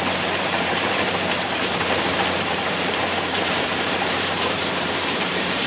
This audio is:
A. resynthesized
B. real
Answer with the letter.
A